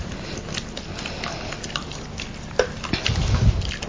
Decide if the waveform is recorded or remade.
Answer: recorded